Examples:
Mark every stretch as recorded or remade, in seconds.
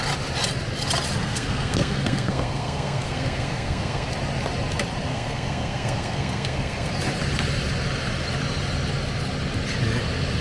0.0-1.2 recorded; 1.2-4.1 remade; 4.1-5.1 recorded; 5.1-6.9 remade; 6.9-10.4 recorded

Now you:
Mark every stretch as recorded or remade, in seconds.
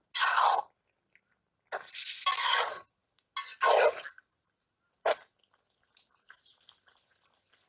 0.0-7.7 recorded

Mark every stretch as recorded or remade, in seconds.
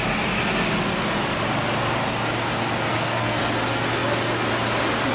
0.0-2.9 recorded; 2.9-3.4 remade; 3.4-5.1 recorded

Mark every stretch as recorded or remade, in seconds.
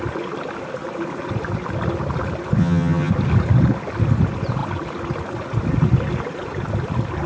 0.0-2.6 recorded; 2.6-3.1 remade; 3.1-7.3 recorded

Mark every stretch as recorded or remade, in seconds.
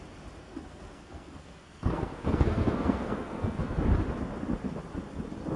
0.0-0.4 recorded; 0.4-3.8 remade; 3.8-5.6 recorded